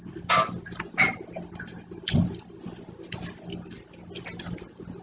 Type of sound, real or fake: real